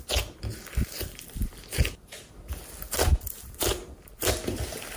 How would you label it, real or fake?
real